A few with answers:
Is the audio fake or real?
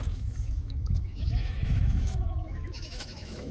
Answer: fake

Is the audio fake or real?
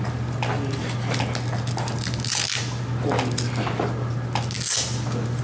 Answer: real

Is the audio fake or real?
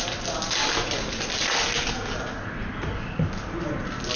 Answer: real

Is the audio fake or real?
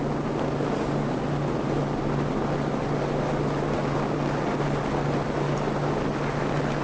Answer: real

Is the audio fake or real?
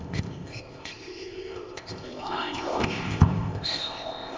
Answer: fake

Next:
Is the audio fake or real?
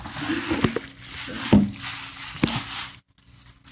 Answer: real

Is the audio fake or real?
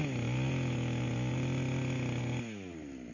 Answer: real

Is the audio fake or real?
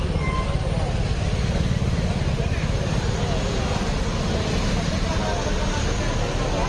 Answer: real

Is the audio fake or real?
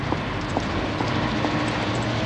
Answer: real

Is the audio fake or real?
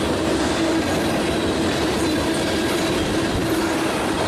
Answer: real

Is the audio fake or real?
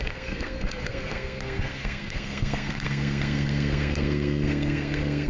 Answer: fake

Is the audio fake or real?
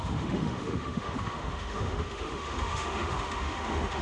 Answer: fake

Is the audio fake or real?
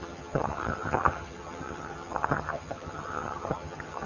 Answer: fake